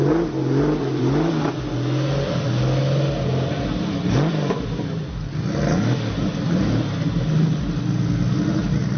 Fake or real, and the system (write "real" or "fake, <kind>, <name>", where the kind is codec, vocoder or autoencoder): real